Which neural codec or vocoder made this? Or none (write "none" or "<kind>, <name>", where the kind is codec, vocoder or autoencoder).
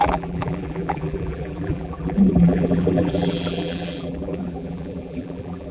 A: vocoder, BigVGAN v2